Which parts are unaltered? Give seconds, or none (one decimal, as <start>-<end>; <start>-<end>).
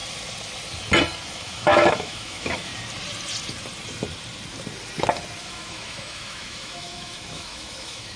0.0-1.3; 2.7-5.4